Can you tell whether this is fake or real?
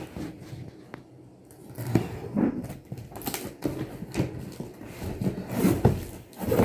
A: real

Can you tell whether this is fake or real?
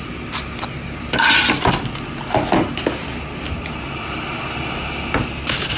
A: real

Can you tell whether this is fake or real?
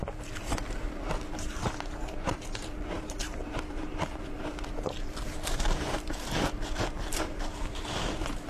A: fake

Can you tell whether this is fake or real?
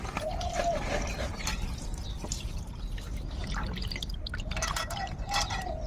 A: fake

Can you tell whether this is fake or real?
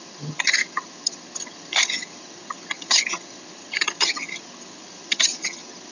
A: fake